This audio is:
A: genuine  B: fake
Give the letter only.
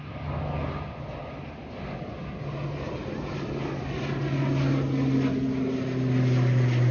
A